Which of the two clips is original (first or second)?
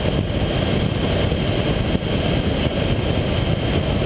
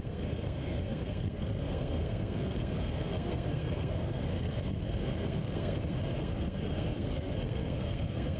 first